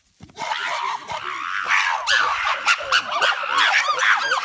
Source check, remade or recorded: remade